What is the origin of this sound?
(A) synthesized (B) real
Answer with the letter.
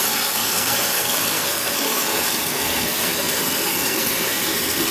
A